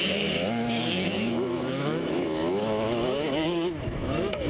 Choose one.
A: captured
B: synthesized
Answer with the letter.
B